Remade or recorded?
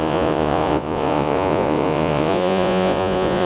remade